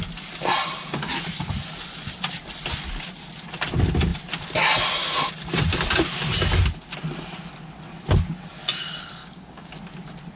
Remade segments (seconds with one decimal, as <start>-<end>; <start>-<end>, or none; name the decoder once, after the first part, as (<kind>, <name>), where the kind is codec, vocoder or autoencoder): 9.2-9.8 (codec, DAC)